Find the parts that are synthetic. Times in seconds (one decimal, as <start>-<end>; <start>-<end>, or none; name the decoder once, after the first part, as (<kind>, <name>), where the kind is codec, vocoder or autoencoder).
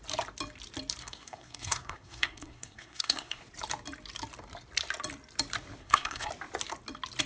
1.0-3.4 (codec, SNAC); 5.8-6.3